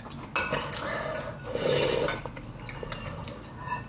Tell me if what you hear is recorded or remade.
recorded